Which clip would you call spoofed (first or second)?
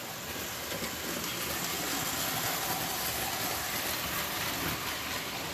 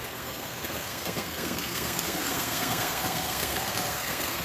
second